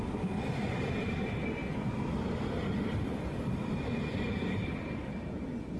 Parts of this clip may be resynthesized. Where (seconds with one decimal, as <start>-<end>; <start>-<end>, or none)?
none